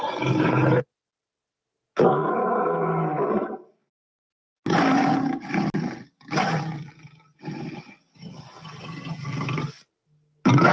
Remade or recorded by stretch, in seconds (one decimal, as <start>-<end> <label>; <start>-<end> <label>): 0.0-10.7 recorded